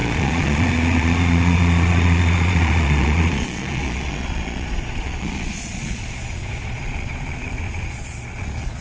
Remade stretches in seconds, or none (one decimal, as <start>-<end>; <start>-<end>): 0.0-8.8